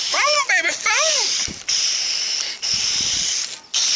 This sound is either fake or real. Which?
real